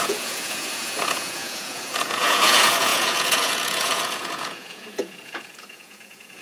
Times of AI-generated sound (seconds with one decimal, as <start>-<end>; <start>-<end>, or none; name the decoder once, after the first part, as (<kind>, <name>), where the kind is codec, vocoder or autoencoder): 0.0-6.4 (vocoder, Vocos)